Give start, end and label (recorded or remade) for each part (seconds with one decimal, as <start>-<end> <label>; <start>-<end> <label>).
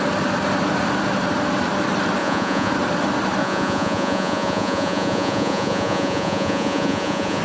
0.0-2.2 recorded; 2.2-2.7 remade; 2.7-3.4 recorded; 3.4-7.4 remade